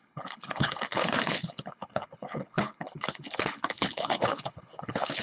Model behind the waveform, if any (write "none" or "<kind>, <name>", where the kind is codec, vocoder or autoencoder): codec, HILCodec